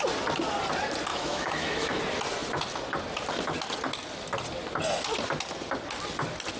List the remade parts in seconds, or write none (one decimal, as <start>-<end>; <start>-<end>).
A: 1.1-2.0